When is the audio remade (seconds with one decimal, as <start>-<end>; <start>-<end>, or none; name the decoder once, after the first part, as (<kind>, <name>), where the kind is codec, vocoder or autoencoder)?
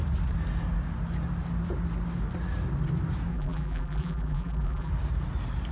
3.3-4.9 (vocoder, BigVGAN v2)